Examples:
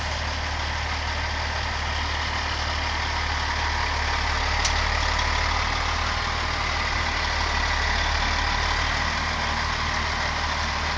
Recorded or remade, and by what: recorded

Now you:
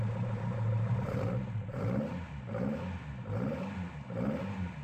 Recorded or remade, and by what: recorded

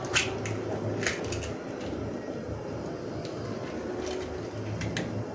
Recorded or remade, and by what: recorded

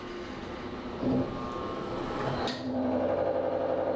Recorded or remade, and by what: recorded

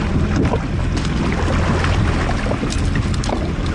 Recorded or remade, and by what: recorded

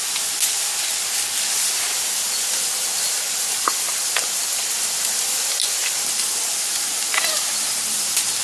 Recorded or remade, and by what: recorded